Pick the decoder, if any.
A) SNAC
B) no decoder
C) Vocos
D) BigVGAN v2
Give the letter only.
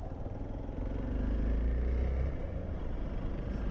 B